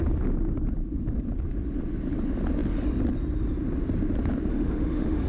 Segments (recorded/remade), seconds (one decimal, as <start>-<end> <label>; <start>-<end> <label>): 0.0-4.5 recorded; 4.5-5.3 remade